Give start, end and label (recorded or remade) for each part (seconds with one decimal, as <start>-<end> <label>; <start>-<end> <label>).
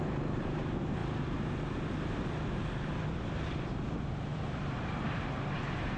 0.0-1.0 remade; 1.0-3.2 recorded; 3.2-6.0 remade